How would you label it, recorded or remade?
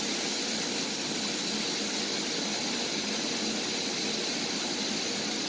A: recorded